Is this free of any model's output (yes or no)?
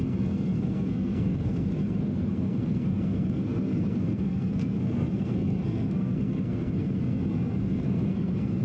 no